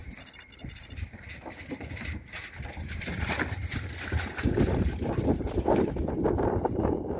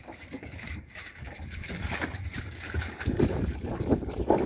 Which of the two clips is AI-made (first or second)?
second